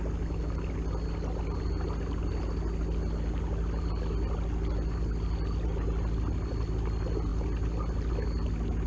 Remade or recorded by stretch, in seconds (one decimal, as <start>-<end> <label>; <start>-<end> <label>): 0.0-8.9 recorded